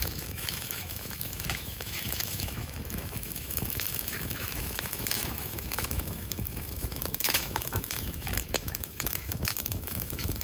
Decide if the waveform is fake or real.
fake